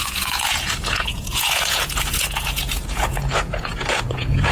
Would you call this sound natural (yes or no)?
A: no